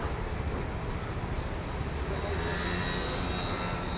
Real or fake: real